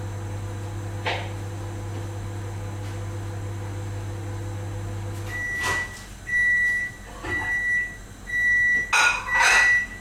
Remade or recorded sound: recorded